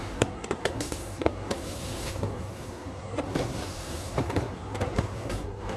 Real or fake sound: fake